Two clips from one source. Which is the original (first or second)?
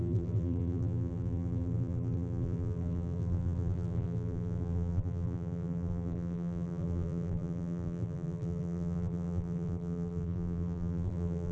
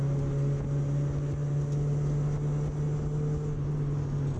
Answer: second